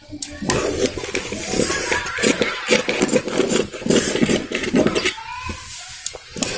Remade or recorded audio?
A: recorded